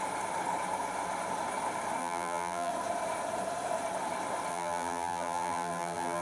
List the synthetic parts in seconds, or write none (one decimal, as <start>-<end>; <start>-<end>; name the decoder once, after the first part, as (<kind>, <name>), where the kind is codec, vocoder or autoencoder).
2.0-2.7 (vocoder, BigVGAN v2); 4.5-6.2